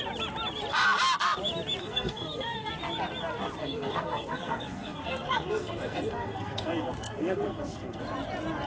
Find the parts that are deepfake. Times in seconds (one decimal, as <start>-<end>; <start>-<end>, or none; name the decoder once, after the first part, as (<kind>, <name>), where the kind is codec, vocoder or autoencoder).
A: 1.8-2.7 (codec, SNAC); 3.6-8.0